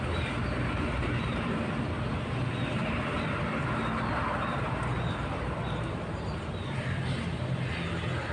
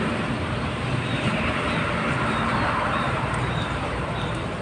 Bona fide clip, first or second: first